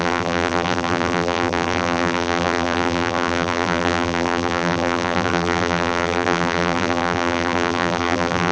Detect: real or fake fake